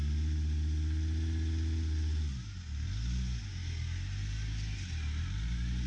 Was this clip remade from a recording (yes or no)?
no